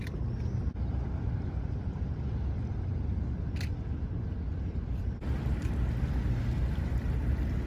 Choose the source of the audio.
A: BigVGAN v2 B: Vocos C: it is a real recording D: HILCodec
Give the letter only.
C